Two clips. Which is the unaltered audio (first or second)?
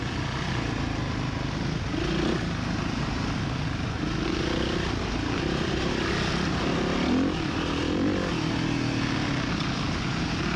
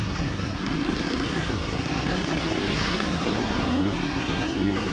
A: first